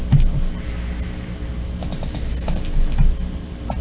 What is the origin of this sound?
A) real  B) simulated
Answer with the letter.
A